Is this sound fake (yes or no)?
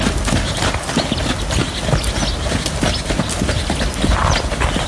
no